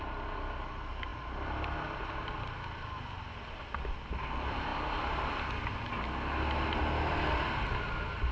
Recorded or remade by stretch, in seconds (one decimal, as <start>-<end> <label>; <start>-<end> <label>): 0.0-8.3 recorded